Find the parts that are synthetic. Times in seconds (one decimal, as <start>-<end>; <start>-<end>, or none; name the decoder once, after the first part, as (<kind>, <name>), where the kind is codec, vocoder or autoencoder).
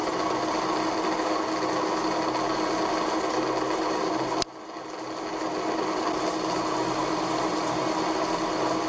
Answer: 0.0-0.8 (vocoder, BigVGAN v2); 7.0-7.8